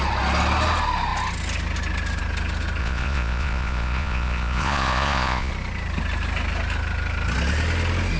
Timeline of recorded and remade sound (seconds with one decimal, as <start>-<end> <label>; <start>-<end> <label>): 0.0-2.8 recorded; 2.8-5.5 remade; 5.5-8.2 recorded